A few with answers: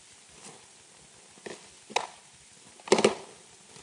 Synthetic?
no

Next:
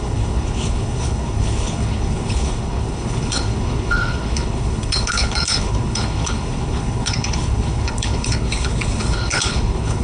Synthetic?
yes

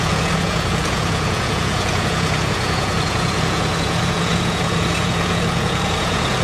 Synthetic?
yes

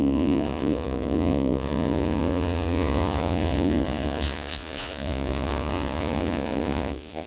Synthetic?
yes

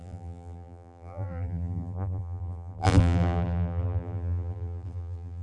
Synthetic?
yes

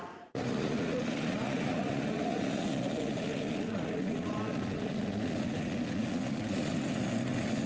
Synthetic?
yes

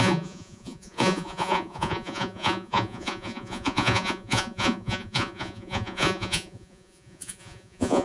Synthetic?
yes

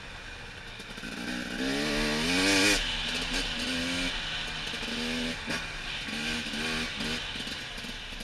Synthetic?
no